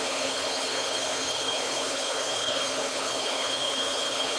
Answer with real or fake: fake